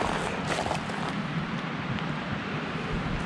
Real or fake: real